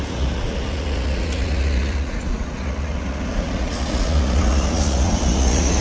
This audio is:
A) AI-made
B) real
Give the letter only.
A